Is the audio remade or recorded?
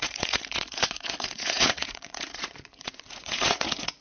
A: remade